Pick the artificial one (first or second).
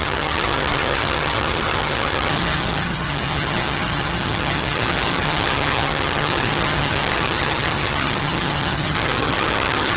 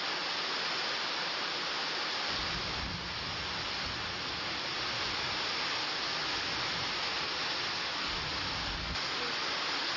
first